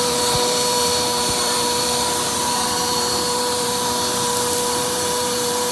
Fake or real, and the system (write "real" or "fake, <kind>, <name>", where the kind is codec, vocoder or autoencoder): fake, vocoder, BigVGAN v2